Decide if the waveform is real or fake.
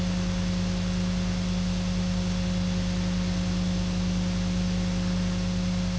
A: real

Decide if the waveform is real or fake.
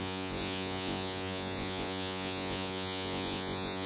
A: fake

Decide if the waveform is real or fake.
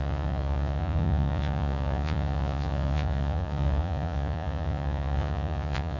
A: fake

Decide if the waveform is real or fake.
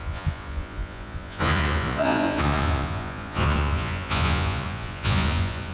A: fake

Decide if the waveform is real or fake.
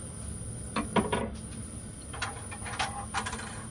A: real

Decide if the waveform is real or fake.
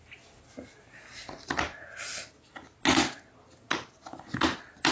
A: real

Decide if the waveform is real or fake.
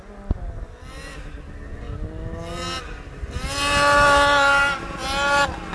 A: real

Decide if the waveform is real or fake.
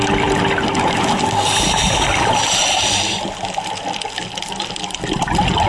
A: real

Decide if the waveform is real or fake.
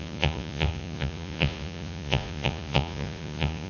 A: fake